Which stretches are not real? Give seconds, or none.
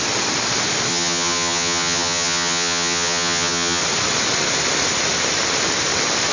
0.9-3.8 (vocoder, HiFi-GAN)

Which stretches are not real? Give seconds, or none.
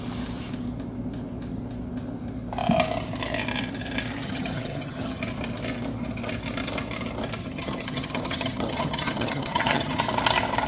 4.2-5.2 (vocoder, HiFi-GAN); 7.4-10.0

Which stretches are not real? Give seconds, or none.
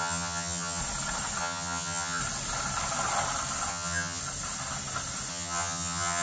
0.0-0.8 (vocoder, HiFi-GAN); 1.4-2.2; 3.7-4.2; 5.3-6.2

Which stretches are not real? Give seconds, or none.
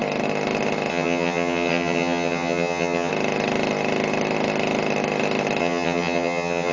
0.9-3.1 (vocoder, HiFi-GAN); 5.6-6.7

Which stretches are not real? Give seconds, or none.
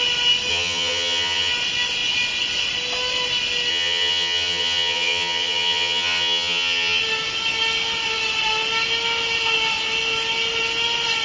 0.5-1.5 (vocoder, HiFi-GAN); 3.7-7.0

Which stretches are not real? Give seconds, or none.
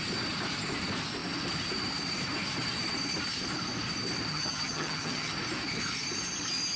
4.3-5.3 (vocoder, HiFi-GAN)